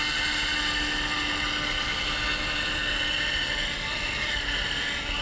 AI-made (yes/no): no